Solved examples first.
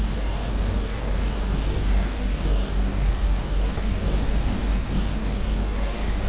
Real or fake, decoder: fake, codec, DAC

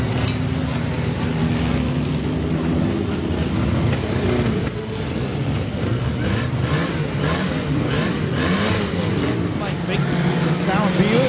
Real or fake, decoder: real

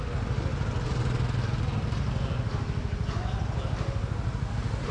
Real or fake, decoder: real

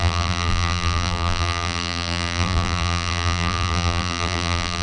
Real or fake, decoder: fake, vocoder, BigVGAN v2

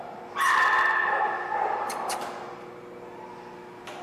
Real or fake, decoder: real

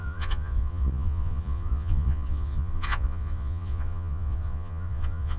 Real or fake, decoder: fake, vocoder, Vocos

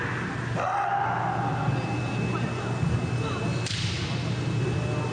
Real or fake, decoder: real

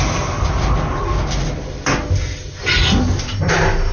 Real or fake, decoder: real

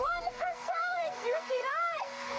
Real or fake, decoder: fake, codec, SNAC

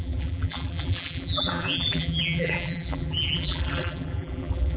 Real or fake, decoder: fake, vocoder, BigVGAN v2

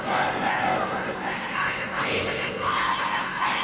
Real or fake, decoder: fake, codec, SNAC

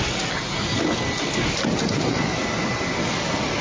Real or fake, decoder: real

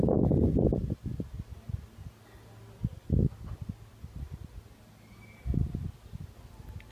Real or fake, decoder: real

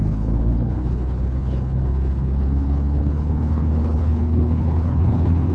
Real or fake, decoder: fake, codec, HILCodec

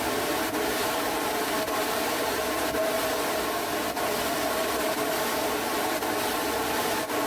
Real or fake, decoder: real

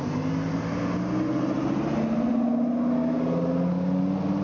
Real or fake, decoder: real